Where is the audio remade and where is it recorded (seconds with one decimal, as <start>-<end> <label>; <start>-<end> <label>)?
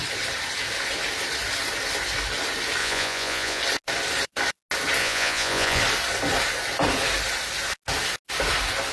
0.0-2.8 recorded; 2.8-3.6 remade; 3.6-5.0 recorded; 5.0-5.8 remade; 5.8-8.9 recorded